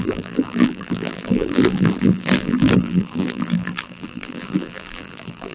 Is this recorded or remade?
remade